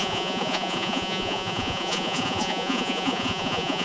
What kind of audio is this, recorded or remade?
remade